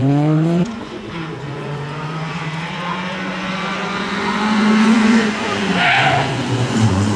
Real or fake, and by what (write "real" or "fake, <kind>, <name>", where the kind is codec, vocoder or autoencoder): fake, vocoder, Vocos